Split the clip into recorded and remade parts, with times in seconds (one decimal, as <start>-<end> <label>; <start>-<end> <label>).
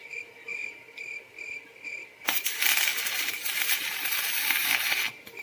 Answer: 0.0-2.9 recorded; 2.9-3.6 remade; 3.6-5.4 recorded